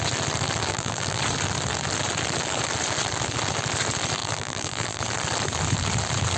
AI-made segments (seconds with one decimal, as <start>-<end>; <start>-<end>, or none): 0.7-1.2; 4.2-5.0